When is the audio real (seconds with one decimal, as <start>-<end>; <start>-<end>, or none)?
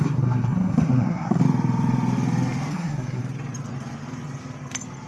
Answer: 1.4-2.7; 3.2-5.1